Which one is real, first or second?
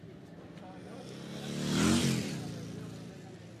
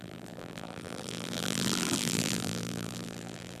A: first